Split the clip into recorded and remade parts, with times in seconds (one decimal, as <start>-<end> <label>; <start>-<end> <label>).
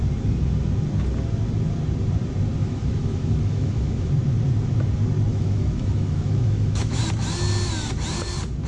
0.0-2.6 recorded; 2.6-4.1 remade; 4.1-5.3 recorded; 5.3-7.0 remade; 7.0-8.7 recorded